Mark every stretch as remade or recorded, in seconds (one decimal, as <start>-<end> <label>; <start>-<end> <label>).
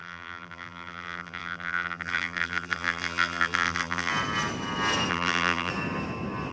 0.0-4.1 remade; 4.1-5.1 recorded; 5.1-5.7 remade; 5.7-6.5 recorded